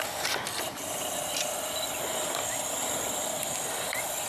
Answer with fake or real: real